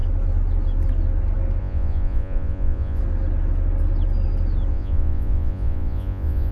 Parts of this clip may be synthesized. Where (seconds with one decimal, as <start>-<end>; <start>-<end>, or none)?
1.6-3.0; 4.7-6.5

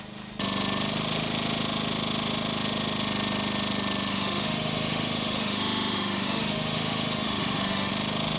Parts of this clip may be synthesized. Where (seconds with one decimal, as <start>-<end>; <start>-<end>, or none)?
4.1-7.9

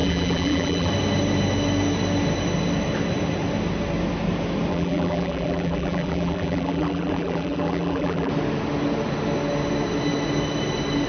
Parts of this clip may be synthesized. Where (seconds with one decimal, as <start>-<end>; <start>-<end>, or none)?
0.0-0.9; 4.7-8.3

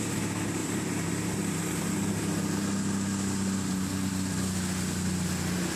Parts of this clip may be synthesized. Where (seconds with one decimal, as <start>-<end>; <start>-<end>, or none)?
0.6-2.2